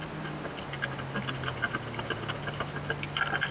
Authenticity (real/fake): real